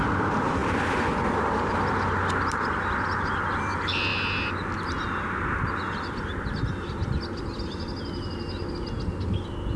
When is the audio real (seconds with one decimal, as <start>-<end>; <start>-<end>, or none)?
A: 0.0-9.8